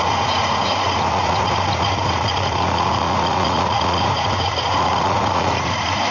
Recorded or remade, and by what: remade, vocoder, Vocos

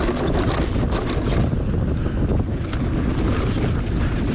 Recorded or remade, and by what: recorded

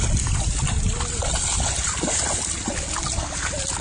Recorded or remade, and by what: recorded